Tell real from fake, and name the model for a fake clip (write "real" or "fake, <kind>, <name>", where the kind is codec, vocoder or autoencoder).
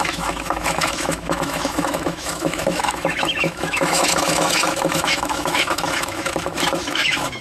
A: fake, autoencoder, DAC-VAE